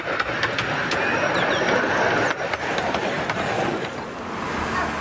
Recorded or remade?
recorded